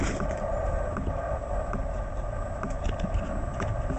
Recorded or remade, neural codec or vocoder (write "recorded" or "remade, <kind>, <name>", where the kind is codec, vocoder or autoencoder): recorded